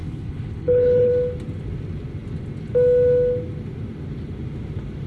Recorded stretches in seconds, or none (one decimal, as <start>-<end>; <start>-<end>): 1.1-5.1